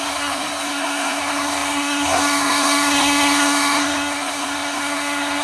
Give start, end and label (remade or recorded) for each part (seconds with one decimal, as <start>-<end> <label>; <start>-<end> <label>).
0.0-5.4 remade